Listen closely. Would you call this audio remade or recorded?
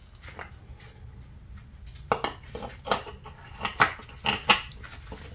recorded